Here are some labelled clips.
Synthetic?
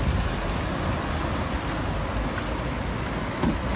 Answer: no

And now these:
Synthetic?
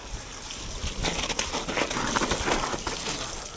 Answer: no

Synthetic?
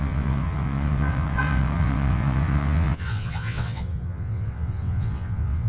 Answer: yes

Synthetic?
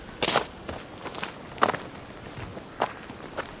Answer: no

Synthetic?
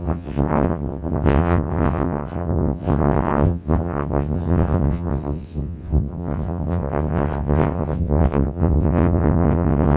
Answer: yes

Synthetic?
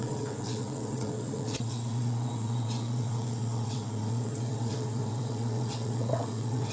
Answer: yes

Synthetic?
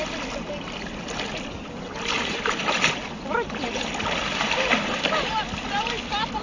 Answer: no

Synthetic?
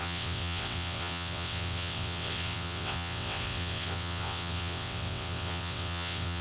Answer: yes